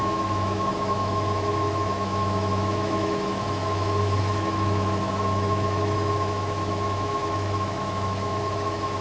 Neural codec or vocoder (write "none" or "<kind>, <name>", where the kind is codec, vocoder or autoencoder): autoencoder, DAC-VAE